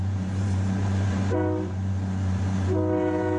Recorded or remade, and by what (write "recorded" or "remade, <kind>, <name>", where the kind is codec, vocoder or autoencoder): remade, vocoder, BigVGAN v2